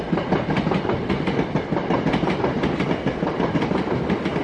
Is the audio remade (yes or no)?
no